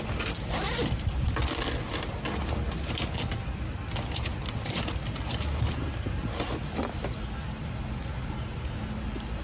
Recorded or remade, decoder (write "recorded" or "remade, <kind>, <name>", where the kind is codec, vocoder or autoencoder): recorded